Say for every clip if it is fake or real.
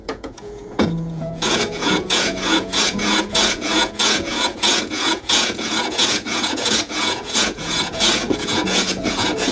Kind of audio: fake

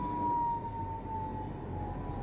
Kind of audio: real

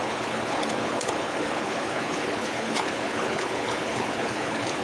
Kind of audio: fake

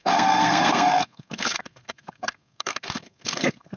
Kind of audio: fake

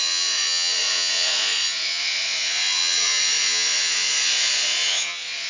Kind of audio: fake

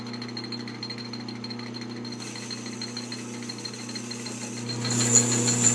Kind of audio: real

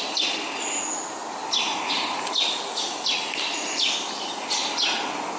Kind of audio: real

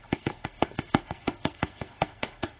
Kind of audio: fake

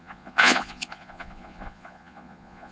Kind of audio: fake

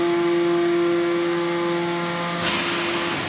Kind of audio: real